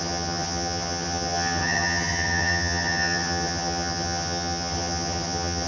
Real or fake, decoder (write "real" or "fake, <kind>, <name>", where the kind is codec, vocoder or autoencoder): fake, vocoder, HiFi-GAN